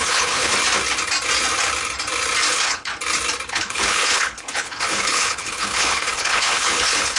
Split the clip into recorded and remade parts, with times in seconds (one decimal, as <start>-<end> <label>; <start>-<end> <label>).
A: 0.0-0.5 remade; 0.5-2.5 recorded; 2.5-2.9 remade; 2.9-3.5 recorded; 3.5-7.2 remade